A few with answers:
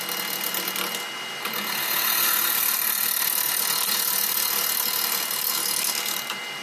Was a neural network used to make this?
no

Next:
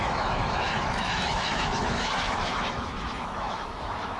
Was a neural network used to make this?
yes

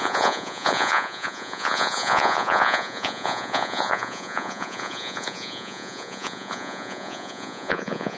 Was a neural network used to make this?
yes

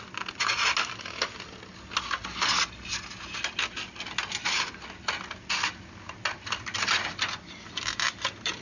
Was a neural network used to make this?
no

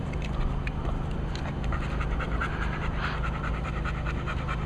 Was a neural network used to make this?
yes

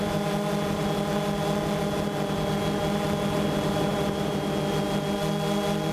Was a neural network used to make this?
no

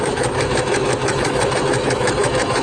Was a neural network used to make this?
yes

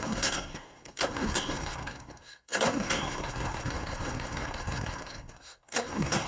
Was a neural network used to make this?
yes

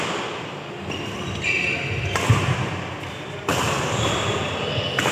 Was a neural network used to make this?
no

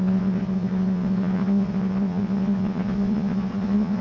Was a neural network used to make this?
yes